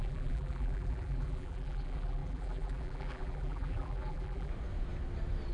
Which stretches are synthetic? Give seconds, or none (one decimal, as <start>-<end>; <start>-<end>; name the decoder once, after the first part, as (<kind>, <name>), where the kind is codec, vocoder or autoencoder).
0.0-4.5 (vocoder, BigVGAN v2)